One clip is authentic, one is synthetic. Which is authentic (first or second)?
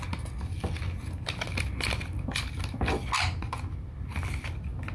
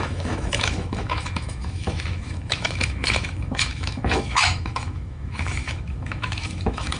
first